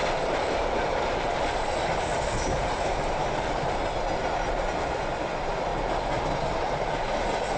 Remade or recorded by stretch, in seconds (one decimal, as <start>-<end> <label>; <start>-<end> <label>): 0.0-4.2 remade; 4.2-7.6 recorded